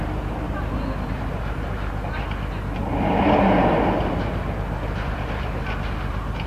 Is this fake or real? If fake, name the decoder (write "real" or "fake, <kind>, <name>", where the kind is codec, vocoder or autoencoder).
real